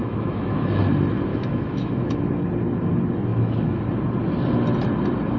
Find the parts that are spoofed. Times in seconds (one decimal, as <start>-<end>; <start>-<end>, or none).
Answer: 0.0-0.8; 1.3-2.2; 3.3-3.8